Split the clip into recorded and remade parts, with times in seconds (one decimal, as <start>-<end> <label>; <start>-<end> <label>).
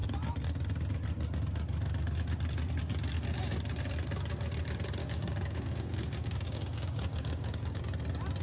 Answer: 0.0-5.0 recorded; 5.0-7.8 remade; 7.8-8.4 recorded